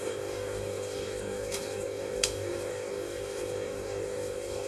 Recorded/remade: remade